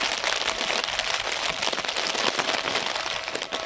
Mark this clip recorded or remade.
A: recorded